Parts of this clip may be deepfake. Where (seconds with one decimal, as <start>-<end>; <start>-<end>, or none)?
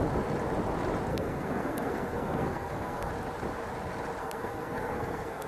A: 1.1-3.1; 4.2-5.5